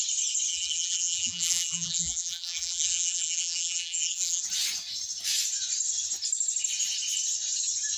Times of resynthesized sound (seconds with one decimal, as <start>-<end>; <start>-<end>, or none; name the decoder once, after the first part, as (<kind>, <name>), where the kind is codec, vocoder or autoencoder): 0.5-4.4 (vocoder, BigVGAN v2)